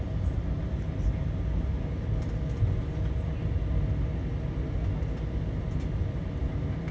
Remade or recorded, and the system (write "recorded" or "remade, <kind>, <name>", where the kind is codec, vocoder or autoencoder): recorded